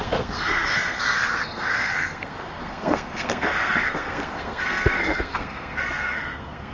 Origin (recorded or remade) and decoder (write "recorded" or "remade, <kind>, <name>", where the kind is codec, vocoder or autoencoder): remade, codec, SNAC